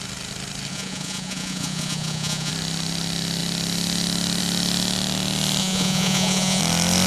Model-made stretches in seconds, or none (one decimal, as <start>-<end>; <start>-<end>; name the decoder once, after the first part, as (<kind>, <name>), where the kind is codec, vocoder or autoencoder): 0.7-2.5 (vocoder, Vocos); 5.6-6.6